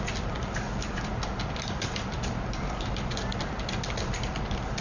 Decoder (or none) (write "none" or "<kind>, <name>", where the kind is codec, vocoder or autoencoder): none